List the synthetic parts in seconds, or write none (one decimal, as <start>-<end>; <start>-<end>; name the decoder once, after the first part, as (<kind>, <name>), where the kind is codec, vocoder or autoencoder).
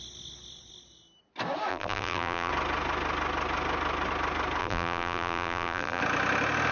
1.7-2.5 (vocoder, BigVGAN v2); 4.6-6.0